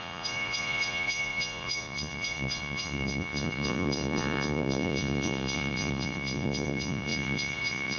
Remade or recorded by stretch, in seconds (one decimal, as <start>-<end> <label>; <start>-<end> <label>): 0.0-8.0 remade